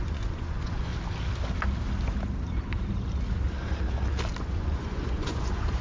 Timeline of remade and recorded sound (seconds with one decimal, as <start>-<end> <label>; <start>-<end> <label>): 0.0-0.9 remade; 0.9-4.4 recorded; 4.4-5.8 remade